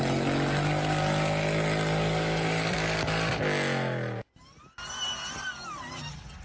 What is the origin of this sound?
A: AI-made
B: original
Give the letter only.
B